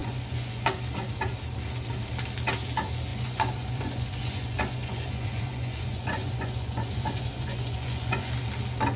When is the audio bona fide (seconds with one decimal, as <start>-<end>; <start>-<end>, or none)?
0.7-3.1; 8.3-9.0